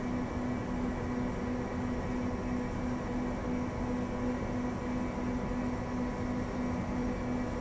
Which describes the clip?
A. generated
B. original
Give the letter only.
B